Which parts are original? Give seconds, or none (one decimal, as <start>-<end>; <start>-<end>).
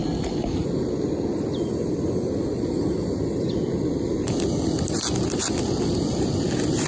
0.0-6.9